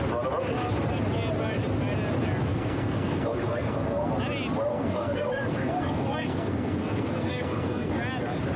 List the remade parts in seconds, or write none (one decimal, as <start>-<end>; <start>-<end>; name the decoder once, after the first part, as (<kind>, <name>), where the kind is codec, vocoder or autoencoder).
2.5-4.1 (codec, SNAC); 4.7-7.9